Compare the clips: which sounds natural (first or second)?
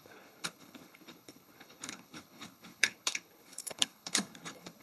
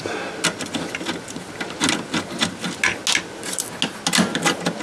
second